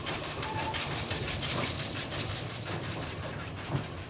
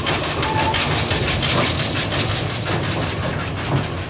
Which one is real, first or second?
second